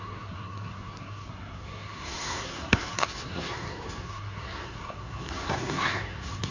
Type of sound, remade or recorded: remade